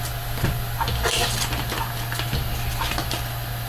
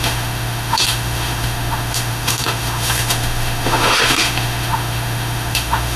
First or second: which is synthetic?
second